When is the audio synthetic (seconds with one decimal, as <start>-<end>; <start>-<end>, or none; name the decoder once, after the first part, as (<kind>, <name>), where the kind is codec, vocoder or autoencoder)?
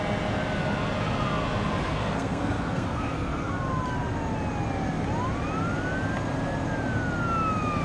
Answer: 1.8-3.5 (codec, SNAC)